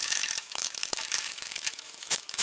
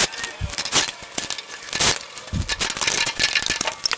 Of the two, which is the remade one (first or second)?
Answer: first